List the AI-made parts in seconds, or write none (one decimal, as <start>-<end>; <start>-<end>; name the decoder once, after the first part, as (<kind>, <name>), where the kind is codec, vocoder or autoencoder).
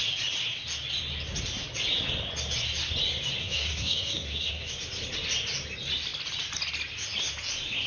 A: 3.4-4.7 (codec, SNAC)